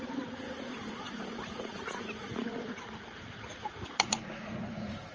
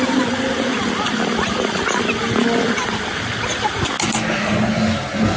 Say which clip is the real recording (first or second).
second